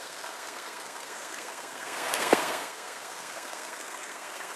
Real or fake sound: fake